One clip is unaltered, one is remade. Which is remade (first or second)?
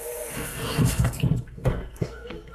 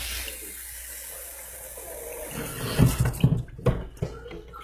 first